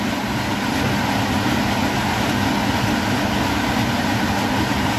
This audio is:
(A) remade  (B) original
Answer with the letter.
B